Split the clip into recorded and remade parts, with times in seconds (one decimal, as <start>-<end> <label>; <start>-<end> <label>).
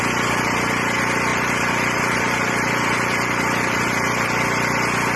0.0-1.3 recorded; 1.3-4.4 remade; 4.4-5.2 recorded